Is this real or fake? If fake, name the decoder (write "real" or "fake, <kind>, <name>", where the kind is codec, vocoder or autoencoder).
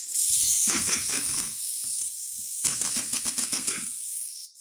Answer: fake, codec, SNAC